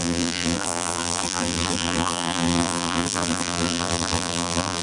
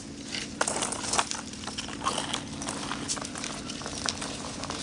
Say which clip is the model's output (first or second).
first